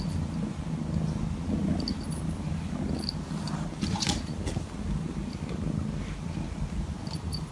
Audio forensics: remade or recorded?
recorded